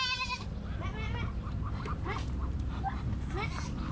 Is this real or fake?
real